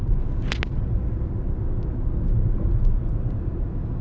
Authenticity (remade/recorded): recorded